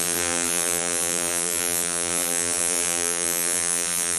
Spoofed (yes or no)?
yes